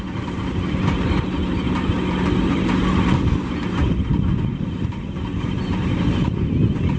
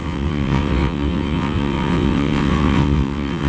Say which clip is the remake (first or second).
second